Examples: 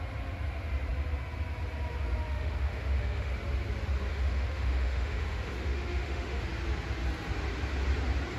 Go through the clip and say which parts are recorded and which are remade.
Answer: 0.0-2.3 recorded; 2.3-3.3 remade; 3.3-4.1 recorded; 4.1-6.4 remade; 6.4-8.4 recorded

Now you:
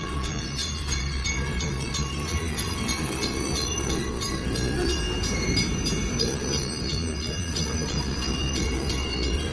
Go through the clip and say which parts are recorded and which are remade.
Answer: 0.0-5.0 remade; 5.0-6.2 recorded; 6.2-9.5 remade